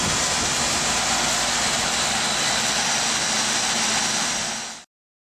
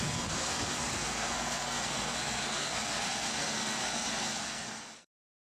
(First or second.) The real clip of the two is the first